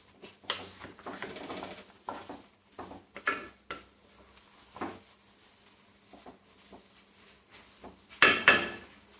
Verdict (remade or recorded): recorded